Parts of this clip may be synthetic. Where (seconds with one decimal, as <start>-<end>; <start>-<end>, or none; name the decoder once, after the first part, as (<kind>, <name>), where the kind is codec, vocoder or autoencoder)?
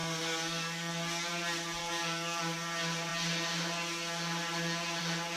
0.0-0.9 (codec, DAC); 1.8-2.4